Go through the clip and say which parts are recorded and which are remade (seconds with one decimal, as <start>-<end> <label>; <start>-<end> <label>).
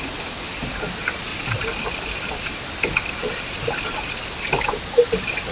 0.0-1.3 recorded; 1.3-4.6 remade; 4.6-5.5 recorded